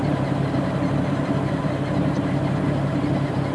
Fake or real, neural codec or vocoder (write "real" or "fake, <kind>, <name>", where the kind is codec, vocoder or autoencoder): real